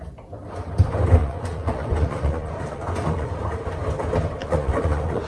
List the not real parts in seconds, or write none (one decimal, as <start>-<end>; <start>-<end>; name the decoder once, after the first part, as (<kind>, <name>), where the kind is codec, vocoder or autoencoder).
1.2-3.3 (vocoder, Vocos); 4.4-5.3